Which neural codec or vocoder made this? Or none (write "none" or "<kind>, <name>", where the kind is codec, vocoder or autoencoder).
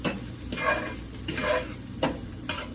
none